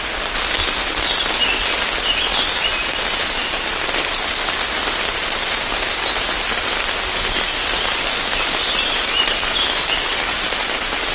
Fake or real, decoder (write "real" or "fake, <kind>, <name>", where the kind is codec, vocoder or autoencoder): real